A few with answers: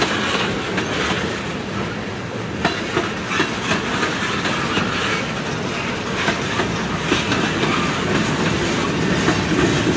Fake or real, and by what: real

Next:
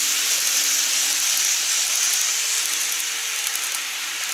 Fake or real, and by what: real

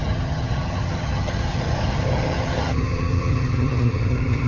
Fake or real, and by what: fake, vocoder, HiFi-GAN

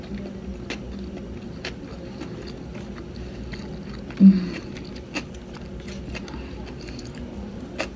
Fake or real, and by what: real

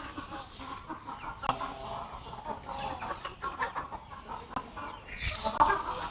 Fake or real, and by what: real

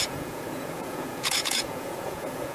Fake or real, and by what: fake, vocoder, Vocos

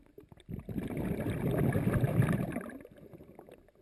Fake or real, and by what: real